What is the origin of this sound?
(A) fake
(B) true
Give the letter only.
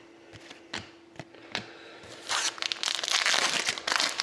B